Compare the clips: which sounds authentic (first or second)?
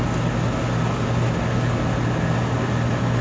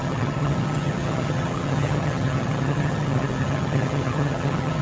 first